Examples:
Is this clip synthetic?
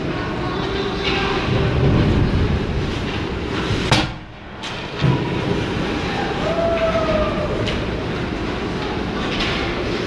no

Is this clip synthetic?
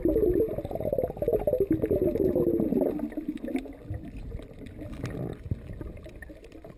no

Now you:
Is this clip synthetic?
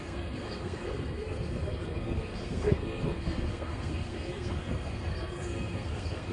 yes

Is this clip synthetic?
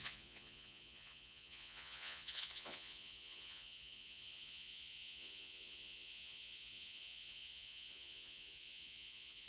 yes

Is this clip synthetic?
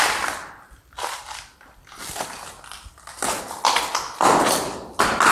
yes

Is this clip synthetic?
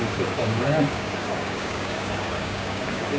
yes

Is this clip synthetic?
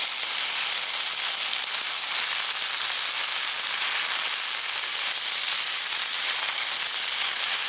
no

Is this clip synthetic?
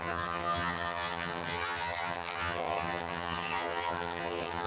yes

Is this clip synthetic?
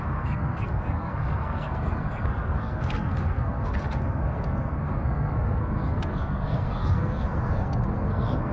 yes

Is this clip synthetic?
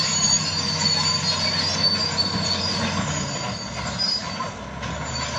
no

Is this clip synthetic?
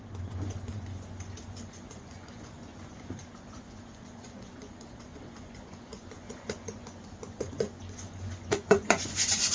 yes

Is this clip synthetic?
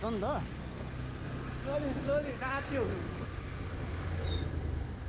no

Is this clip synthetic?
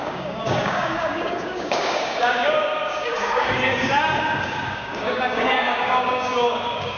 yes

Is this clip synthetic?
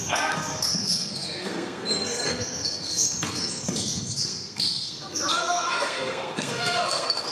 yes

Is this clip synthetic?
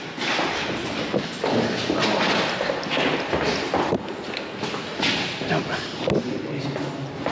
no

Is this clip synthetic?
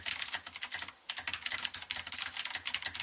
no